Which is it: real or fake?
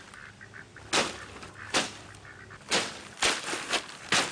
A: real